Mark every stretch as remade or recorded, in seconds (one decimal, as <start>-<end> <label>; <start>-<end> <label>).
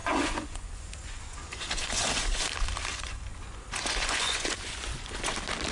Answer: 0.0-2.4 remade; 2.4-2.9 recorded; 2.9-5.3 remade; 5.3-5.7 recorded